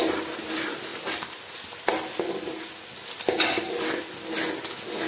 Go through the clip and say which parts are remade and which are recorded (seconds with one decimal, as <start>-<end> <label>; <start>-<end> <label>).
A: 0.0-5.1 recorded